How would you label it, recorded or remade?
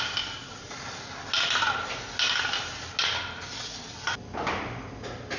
recorded